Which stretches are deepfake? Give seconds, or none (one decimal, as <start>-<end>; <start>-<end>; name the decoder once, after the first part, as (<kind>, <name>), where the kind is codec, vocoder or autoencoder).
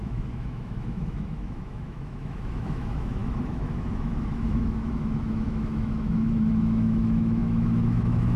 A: 0.0-8.4 (autoencoder, DAC-VAE)